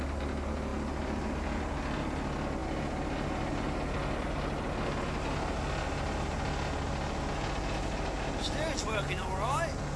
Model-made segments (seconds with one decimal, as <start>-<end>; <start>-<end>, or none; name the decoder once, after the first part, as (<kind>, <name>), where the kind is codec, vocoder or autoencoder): none